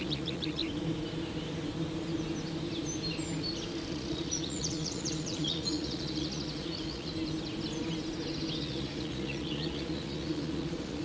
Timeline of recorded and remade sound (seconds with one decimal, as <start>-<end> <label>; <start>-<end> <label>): 0.0-0.6 remade; 0.6-3.9 recorded; 3.9-7.1 remade; 7.1-8.6 recorded; 8.6-11.0 remade